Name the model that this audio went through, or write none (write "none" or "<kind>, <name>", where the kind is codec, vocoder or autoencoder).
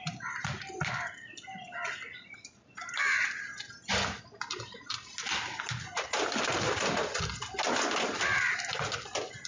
none